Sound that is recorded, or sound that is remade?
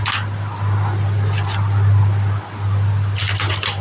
recorded